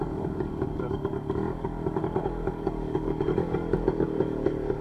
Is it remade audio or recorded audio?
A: remade